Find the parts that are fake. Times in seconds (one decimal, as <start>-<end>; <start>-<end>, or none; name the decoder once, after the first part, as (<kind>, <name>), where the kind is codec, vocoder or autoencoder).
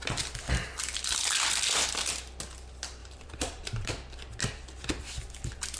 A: 3.0-3.9 (vocoder, BigVGAN v2)